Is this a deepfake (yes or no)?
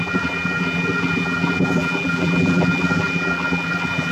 yes